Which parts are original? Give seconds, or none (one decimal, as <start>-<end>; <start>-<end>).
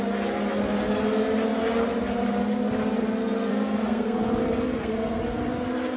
0.0-3.5; 4.2-4.7; 5.2-6.0